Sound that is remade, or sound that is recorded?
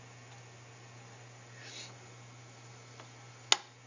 recorded